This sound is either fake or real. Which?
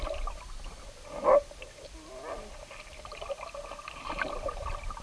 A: real